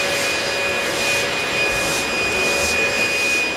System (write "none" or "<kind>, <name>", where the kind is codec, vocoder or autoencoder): none